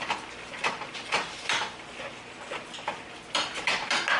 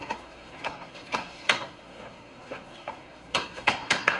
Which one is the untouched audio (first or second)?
first